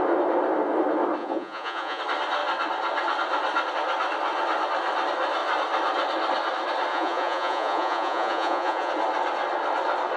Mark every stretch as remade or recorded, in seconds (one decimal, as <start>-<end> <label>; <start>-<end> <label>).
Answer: 0.0-1.2 recorded; 1.2-2.0 remade; 2.0-6.9 recorded; 6.9-8.9 remade; 8.9-10.2 recorded